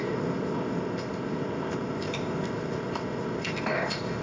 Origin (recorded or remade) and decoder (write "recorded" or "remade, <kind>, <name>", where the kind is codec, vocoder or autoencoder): remade, codec, ZipCodec